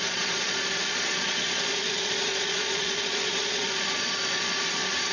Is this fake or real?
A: fake